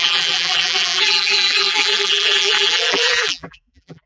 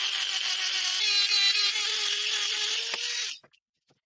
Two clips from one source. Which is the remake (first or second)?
first